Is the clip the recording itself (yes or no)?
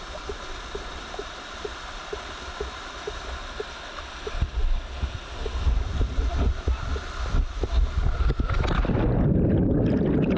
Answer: yes